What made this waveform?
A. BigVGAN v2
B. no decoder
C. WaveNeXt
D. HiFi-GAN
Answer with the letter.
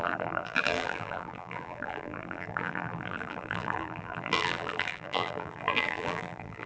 A